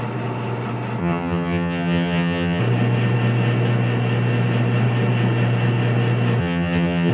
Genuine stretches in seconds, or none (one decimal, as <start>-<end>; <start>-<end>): 0.0-1.0; 2.6-6.4